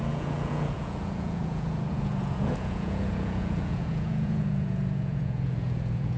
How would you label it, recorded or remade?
remade